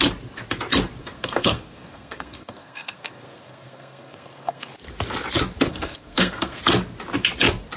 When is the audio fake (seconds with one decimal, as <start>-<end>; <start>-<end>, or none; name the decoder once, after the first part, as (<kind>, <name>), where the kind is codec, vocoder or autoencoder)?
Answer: 1.0-4.7 (codec, SNAC); 5.7-6.6